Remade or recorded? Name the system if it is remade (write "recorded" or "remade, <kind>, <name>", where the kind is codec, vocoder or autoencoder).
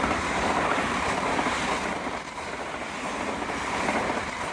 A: recorded